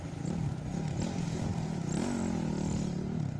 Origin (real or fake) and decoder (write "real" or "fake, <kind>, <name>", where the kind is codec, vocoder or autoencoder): real